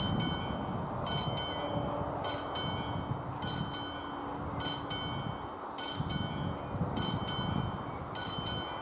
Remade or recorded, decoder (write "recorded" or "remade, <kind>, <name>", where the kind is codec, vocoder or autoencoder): recorded